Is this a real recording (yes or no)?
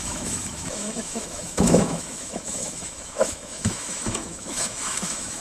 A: no